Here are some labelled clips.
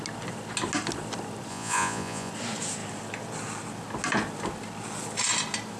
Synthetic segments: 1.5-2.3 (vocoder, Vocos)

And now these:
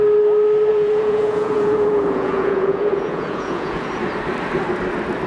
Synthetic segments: 0.7-3.9 (vocoder, Vocos)